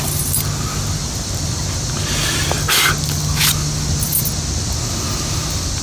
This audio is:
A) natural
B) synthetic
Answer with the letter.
A